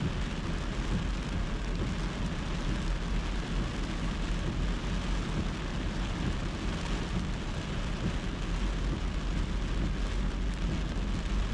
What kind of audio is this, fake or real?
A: real